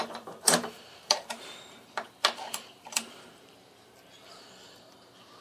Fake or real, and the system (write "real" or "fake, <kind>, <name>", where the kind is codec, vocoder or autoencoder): fake, vocoder, BigVGAN v2